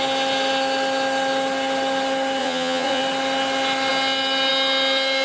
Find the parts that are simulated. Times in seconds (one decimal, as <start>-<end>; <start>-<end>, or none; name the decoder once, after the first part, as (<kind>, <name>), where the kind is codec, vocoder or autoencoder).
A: 2.4-3.0 (vocoder, Vocos)